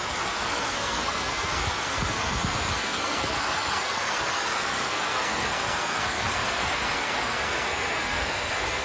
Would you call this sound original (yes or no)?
no